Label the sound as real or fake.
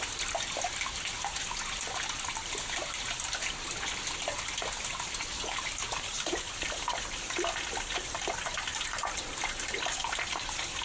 real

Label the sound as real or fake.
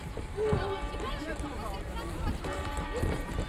fake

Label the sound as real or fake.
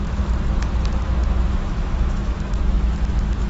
fake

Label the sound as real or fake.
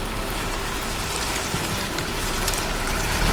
fake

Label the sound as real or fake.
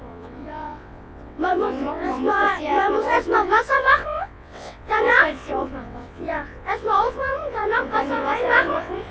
fake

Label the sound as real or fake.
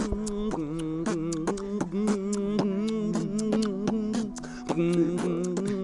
real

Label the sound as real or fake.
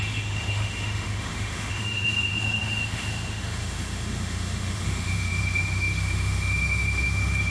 fake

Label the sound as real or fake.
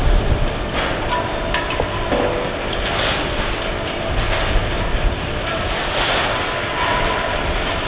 real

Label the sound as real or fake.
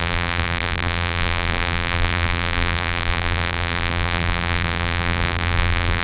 fake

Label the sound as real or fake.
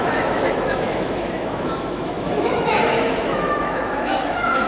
fake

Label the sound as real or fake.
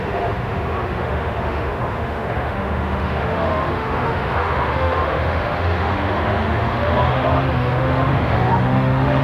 fake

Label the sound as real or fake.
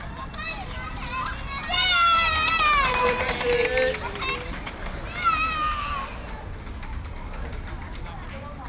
real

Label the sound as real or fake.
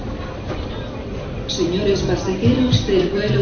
real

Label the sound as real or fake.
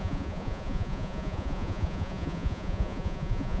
fake